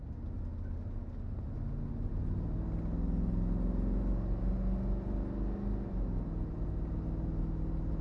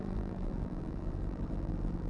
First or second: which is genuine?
first